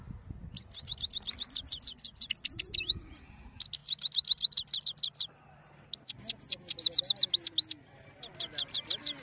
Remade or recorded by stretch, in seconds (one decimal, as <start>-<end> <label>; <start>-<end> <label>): 0.0-9.2 recorded